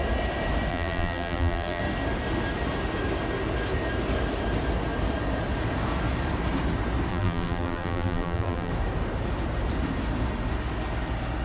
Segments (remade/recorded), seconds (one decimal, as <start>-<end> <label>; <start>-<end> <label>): 0.0-0.7 recorded; 0.7-1.8 remade; 1.8-7.1 recorded; 7.1-8.7 remade; 8.7-11.4 recorded